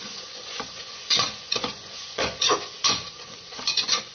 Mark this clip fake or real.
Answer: fake